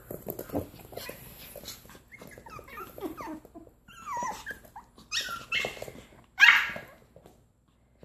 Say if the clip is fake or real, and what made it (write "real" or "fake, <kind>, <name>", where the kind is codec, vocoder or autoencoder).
real